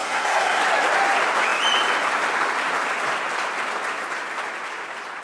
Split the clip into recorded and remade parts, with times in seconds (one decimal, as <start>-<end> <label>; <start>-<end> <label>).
0.0-0.6 remade; 0.6-5.2 recorded

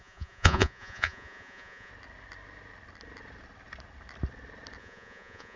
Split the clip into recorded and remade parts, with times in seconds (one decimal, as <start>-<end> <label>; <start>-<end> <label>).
0.0-1.9 remade; 1.9-4.8 recorded; 4.8-5.6 remade